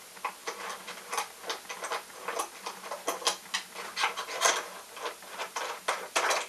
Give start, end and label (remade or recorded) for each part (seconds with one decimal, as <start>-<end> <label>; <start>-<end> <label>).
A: 0.0-6.5 recorded